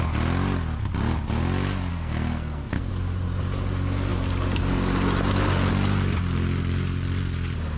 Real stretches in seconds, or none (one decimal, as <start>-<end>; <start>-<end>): 0.0-1.9; 2.9-7.8